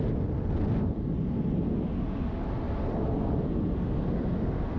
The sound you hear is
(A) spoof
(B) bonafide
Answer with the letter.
B